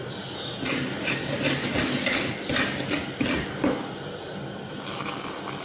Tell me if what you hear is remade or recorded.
recorded